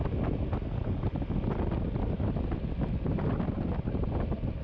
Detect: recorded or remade recorded